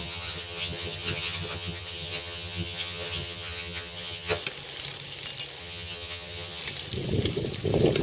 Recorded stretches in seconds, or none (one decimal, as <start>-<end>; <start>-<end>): 4.4-5.6; 6.6-8.0